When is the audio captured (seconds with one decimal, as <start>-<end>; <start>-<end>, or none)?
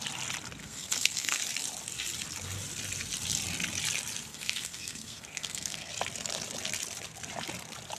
0.0-0.6; 1.4-4.3; 5.9-8.0